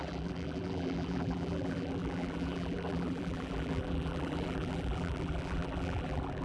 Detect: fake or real fake